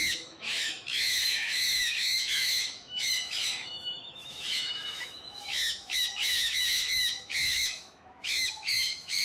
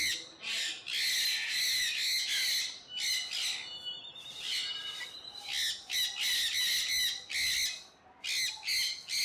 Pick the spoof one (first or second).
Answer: first